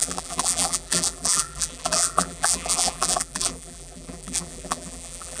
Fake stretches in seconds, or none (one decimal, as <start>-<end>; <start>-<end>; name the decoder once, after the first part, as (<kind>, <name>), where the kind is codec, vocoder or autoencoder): 0.0-5.4 (vocoder, BigVGAN v2)